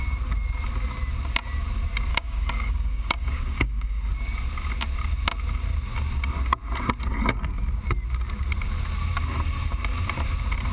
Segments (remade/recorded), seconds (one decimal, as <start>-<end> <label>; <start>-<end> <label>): 0.0-2.1 recorded; 2.1-4.1 remade; 4.1-10.7 recorded